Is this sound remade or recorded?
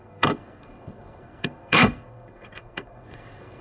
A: remade